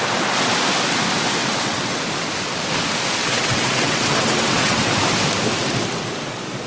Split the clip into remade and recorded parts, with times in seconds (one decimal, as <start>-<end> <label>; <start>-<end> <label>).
0.0-1.4 recorded; 1.4-2.0 remade; 2.0-3.2 recorded; 3.2-4.9 remade; 4.9-6.7 recorded